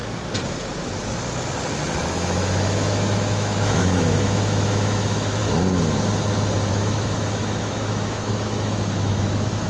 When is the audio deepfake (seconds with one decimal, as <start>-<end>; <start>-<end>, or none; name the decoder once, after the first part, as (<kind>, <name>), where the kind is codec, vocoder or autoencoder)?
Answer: 2.1-5.4 (autoencoder, DAC-VAE); 6.7-9.7